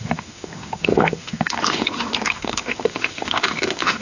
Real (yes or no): no